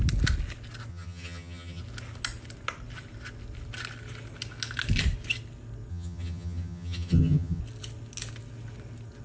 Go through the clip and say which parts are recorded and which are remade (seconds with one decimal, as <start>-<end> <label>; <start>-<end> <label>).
0.0-0.9 recorded; 0.9-1.8 remade; 1.8-5.9 recorded; 5.9-7.6 remade; 7.6-9.2 recorded